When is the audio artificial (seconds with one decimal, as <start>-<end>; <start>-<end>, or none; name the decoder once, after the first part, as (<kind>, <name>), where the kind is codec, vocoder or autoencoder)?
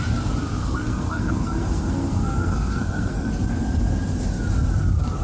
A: 0.6-3.3 (codec, SNAC)